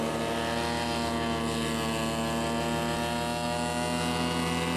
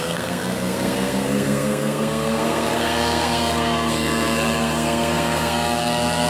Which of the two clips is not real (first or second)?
second